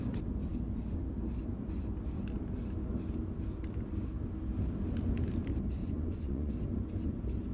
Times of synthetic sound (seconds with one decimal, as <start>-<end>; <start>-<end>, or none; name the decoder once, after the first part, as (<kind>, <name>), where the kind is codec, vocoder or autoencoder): 5.8-6.5 (vocoder, Vocos)